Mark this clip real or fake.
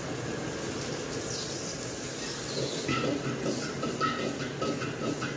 real